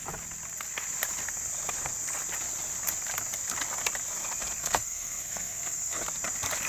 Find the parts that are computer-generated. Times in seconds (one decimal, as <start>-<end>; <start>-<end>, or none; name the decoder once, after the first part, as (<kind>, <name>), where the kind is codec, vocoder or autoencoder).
4.6-6.0 (codec, SNAC)